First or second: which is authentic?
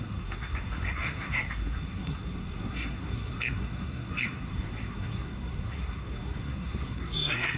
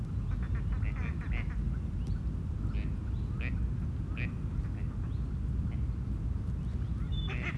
second